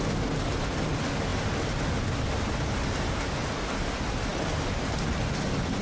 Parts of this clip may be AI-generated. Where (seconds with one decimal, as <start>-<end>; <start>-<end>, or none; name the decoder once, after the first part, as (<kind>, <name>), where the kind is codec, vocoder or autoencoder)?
none